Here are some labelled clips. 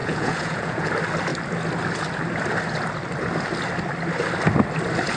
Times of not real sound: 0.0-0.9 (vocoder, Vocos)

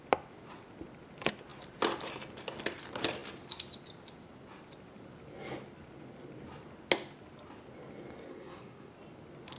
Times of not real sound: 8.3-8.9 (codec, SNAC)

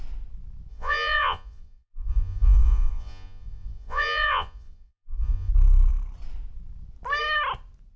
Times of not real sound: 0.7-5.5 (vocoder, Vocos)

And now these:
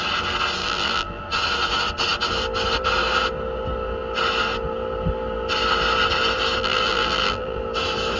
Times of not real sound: 0.6-1.2 (vocoder, BigVGAN v2); 6.6-7.6